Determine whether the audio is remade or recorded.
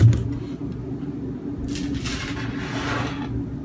recorded